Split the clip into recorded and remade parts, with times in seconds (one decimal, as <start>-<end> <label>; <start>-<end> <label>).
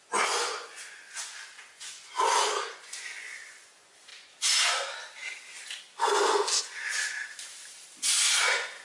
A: 0.0-4.1 remade; 4.1-6.6 recorded; 6.6-7.2 remade; 7.2-8.4 recorded; 8.4-8.8 remade